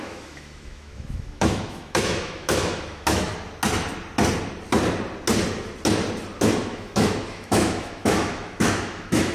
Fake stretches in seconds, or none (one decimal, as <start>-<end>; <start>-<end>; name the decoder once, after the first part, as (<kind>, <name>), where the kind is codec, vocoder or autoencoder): 0.0-3.3 (autoencoder, DAC-VAE); 6.6-9.3

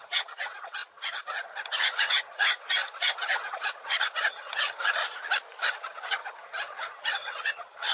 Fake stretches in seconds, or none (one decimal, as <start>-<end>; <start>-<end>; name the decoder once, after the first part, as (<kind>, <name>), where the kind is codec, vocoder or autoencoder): 0.0-5.0 (vocoder, HiFi-GAN); 5.6-7.9

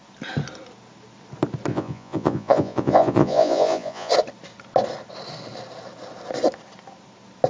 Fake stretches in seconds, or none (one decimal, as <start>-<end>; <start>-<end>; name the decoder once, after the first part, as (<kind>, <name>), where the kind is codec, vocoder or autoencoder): 1.7-4.1 (vocoder, Vocos)